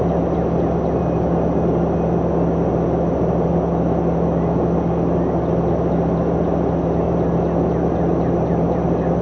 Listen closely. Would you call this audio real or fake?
real